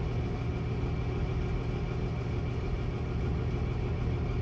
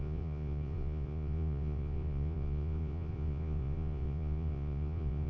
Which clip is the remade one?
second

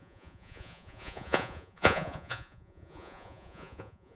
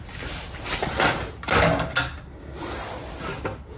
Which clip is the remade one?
first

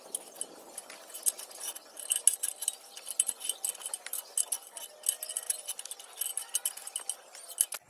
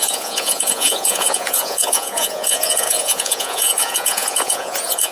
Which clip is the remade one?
second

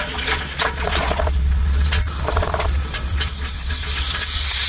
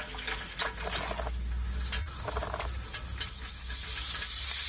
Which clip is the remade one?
first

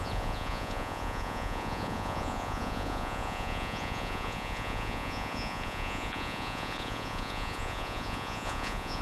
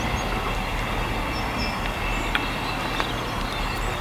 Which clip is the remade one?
first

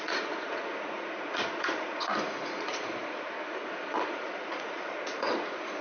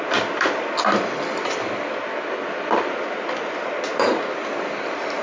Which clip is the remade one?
first